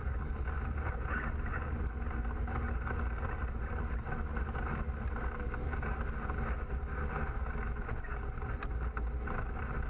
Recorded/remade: recorded